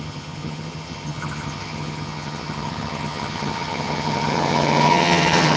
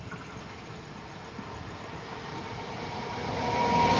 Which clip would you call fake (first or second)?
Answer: first